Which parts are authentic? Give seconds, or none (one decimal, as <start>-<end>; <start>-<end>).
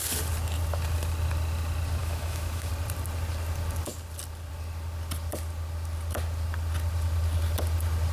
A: 0.0-2.0; 2.7-8.1